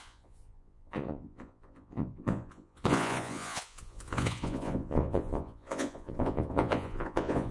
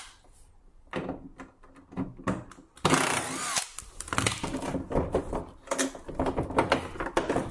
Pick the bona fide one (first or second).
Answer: second